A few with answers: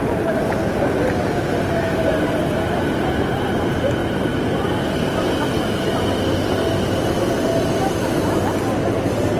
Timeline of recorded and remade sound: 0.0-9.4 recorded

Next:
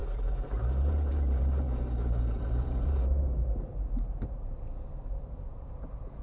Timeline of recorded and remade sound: 0.0-6.2 remade